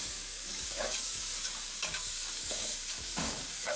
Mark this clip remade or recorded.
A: remade